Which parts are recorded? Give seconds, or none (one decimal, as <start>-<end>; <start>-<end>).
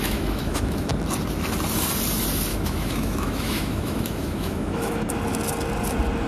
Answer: 0.9-2.5; 5.1-6.3